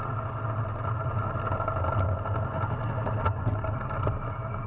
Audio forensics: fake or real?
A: real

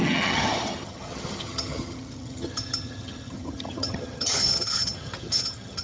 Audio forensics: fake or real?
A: fake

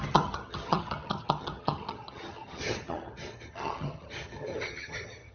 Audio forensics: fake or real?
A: fake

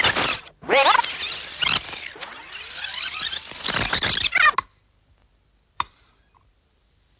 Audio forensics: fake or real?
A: real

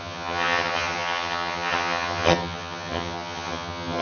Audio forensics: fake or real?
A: fake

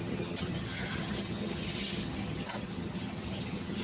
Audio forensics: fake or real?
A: fake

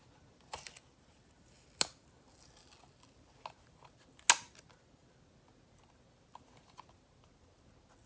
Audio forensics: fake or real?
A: real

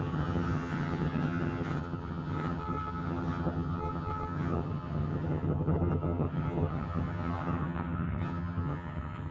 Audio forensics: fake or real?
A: fake